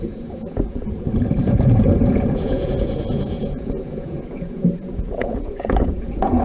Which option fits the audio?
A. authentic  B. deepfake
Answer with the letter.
B